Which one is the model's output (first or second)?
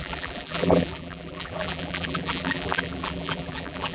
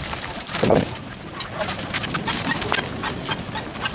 first